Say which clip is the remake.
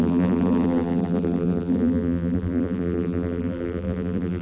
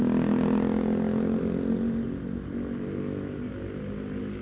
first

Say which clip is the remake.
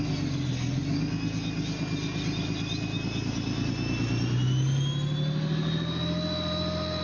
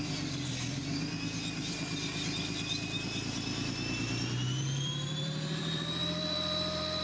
second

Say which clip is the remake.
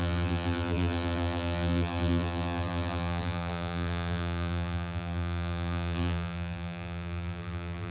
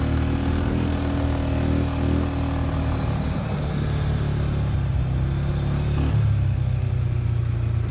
first